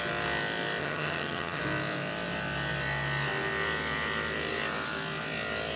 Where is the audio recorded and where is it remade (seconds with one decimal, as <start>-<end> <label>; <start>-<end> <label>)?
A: 0.0-0.8 recorded; 0.8-1.6 remade; 1.6-5.8 recorded